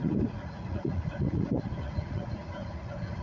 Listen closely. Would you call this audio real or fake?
fake